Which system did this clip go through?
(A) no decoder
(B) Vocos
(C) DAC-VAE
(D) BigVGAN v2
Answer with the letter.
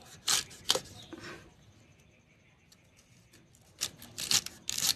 A